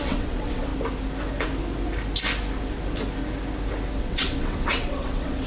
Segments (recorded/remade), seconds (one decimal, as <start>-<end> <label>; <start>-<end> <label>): 0.0-0.7 remade; 0.7-4.0 recorded; 4.0-5.5 remade

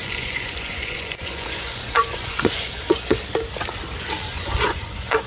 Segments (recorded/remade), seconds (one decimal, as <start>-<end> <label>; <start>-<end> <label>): 0.0-3.2 remade; 3.2-4.3 recorded; 4.3-5.3 remade

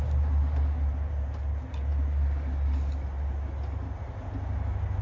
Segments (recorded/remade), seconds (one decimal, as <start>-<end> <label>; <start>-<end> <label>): 0.0-5.0 recorded

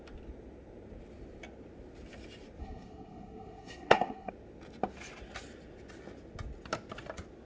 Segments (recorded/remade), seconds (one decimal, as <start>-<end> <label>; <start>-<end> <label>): 0.0-2.6 recorded; 2.6-4.3 remade; 4.3-7.5 recorded

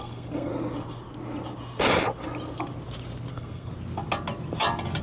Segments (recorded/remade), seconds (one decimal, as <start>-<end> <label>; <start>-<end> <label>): 0.0-0.5 remade; 0.5-3.3 recorded; 3.3-3.7 remade; 3.7-5.0 recorded